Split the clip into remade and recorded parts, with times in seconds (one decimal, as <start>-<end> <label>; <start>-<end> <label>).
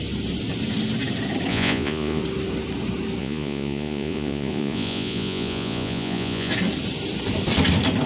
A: 0.0-1.5 recorded; 1.5-2.2 remade; 2.2-3.2 recorded; 3.2-6.5 remade; 6.5-8.1 recorded